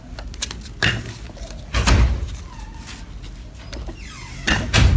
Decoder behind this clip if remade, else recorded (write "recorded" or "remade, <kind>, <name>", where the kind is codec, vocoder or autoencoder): recorded